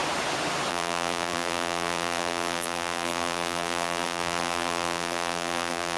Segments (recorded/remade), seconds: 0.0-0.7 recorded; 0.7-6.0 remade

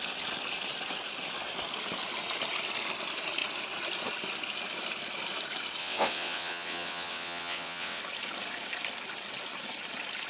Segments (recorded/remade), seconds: 0.0-5.8 recorded; 5.8-8.0 remade; 8.0-10.3 recorded

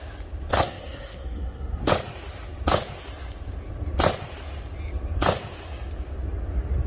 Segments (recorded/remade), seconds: 0.0-0.5 recorded; 0.5-1.9 remade; 1.9-6.9 recorded

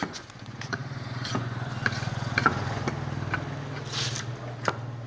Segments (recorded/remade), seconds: 0.0-2.9 remade; 2.9-5.1 recorded

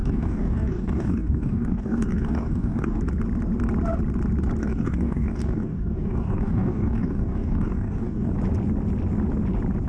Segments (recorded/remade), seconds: 0.0-3.0 remade; 3.0-4.6 recorded; 4.6-8.3 remade; 8.3-9.9 recorded

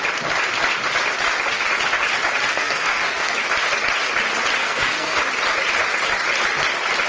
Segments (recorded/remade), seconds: 0.0-2.5 recorded; 2.5-3.3 remade; 3.3-4.6 recorded; 4.6-5.2 remade; 5.2-7.1 recorded